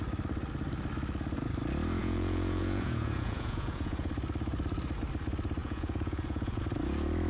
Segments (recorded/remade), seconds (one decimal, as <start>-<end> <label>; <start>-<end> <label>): 0.0-2.0 recorded; 2.0-4.1 remade; 4.1-5.6 recorded; 5.6-6.6 remade; 6.6-7.3 recorded